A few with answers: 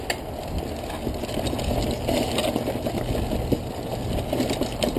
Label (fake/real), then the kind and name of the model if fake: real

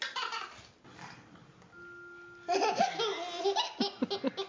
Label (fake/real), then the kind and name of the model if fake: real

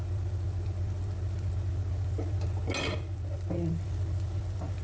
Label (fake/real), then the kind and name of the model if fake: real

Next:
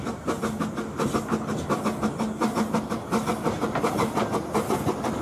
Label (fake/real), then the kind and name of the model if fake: real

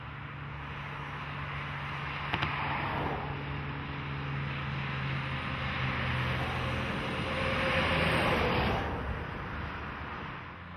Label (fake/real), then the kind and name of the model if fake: real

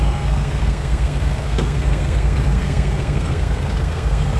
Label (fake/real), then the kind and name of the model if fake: fake, codec, SNAC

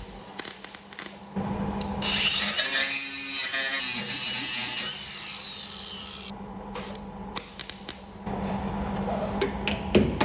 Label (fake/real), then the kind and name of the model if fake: real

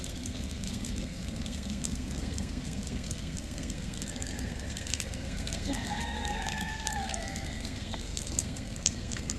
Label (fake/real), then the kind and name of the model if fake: fake, codec, SNAC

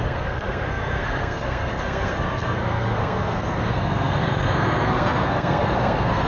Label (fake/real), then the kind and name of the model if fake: fake, codec, SNAC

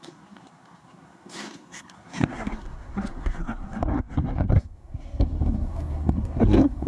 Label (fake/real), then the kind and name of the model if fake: fake, codec, SNAC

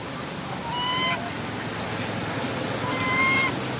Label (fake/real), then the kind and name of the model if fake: real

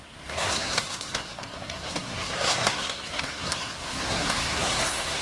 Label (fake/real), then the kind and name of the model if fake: fake, codec, SNAC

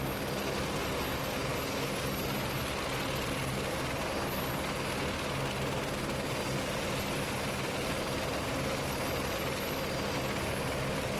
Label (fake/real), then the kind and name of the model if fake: real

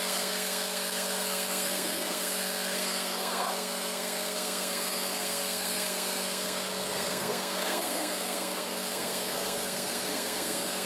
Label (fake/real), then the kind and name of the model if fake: fake, codec, SNAC